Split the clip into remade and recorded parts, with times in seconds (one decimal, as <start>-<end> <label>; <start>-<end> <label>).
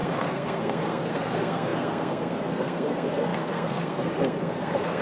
0.0-5.0 remade